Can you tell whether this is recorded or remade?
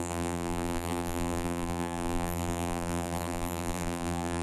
remade